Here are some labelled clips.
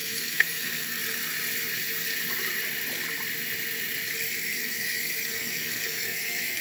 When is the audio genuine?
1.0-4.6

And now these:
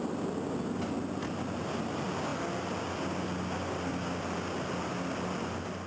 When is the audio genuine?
0.0-5.9

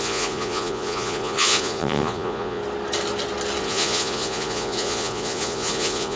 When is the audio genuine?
2.6-3.6

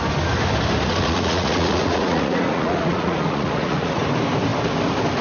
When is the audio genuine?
0.0-0.9; 4.0-5.2

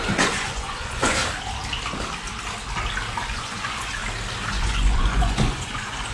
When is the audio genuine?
1.2-3.2; 4.0-4.5

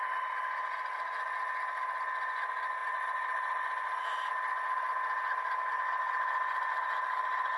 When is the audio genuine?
0.0-7.6